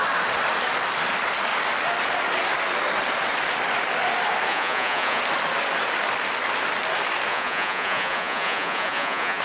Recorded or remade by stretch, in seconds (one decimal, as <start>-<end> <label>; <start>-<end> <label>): 0.0-4.5 recorded; 4.5-5.2 remade; 5.2-7.3 recorded; 7.3-9.4 remade